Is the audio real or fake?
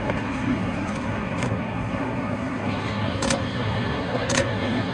fake